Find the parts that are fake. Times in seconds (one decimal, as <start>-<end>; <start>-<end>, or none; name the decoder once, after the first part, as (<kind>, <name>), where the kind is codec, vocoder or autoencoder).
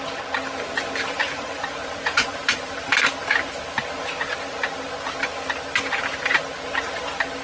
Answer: 1.2-2.4 (vocoder, Vocos)